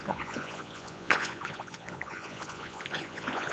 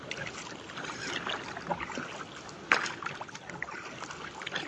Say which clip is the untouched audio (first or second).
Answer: second